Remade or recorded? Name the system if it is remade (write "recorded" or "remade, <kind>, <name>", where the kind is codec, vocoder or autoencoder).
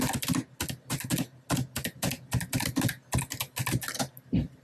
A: recorded